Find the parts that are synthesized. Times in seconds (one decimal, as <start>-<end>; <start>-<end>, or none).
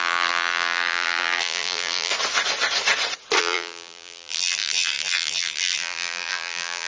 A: 0.0-2.1; 3.4-6.9